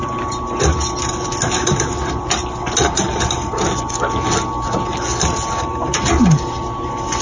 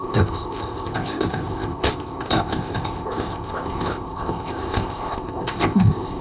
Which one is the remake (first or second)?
second